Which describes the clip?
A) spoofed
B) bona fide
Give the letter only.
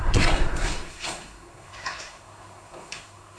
A